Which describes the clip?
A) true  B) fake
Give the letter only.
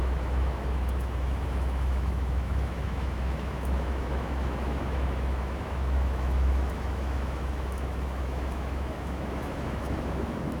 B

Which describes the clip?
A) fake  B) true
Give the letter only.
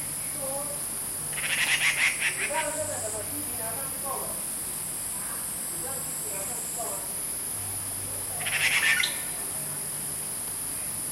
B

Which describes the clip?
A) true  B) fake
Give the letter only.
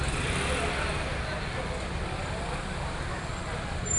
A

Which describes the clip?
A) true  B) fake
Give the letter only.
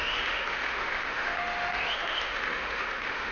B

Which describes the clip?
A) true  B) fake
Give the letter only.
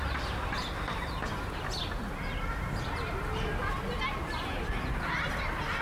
A